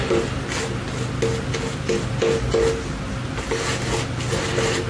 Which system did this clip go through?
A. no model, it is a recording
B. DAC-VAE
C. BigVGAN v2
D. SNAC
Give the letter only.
A